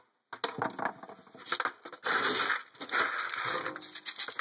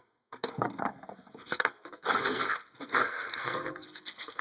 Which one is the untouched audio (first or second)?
first